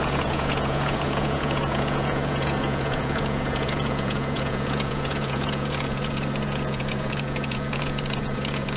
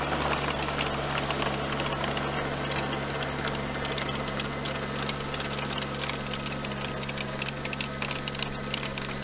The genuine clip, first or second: second